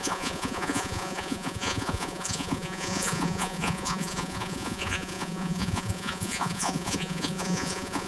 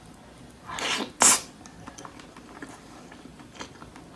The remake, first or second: first